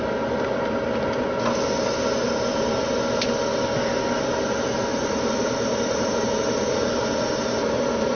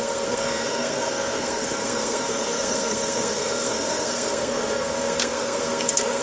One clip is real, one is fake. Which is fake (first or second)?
second